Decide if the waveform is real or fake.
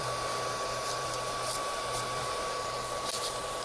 fake